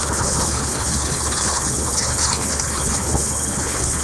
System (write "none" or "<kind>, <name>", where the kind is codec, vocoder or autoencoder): codec, HILCodec